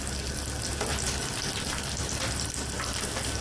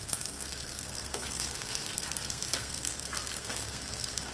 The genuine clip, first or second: first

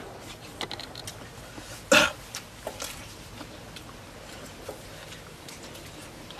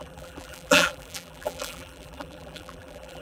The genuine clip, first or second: first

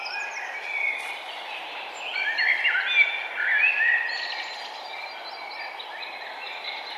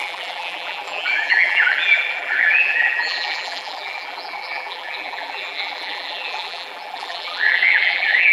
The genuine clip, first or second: first